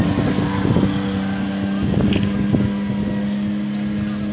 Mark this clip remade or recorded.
recorded